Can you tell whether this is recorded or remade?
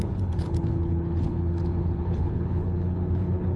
remade